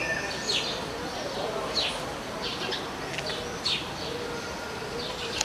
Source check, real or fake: fake